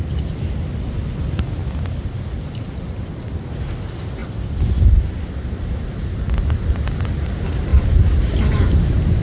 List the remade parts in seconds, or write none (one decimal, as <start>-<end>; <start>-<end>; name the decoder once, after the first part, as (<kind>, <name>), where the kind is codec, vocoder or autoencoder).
none